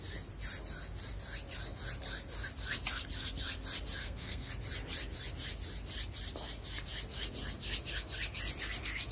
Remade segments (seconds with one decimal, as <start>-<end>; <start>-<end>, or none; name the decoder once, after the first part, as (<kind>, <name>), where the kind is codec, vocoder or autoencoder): 4.0-4.5 (codec, SNAC)